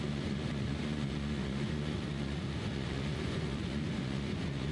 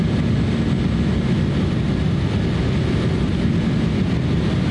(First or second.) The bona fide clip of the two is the second